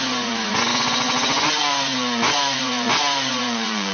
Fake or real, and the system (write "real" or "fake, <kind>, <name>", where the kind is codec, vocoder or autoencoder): fake, vocoder, Vocos